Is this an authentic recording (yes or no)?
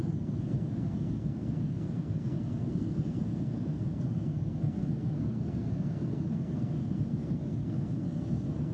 no